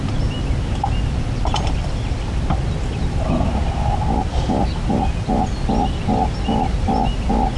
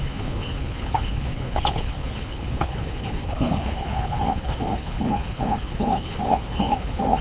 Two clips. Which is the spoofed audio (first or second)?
second